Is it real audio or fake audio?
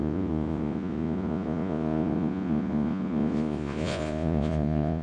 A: fake